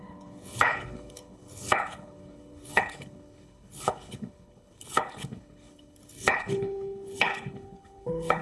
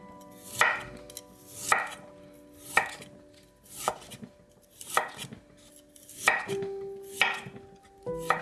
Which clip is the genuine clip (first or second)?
second